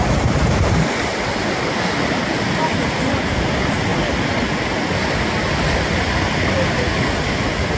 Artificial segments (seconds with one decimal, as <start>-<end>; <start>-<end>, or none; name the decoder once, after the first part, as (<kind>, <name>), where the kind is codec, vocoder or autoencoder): none